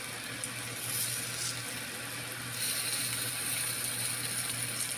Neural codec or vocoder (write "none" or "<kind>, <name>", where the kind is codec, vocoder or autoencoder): none